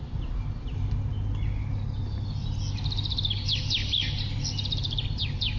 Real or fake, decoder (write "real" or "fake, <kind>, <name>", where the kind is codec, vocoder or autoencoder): real